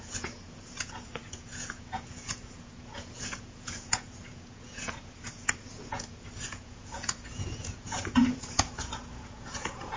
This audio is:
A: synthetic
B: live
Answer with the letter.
A